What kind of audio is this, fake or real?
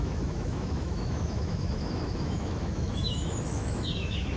fake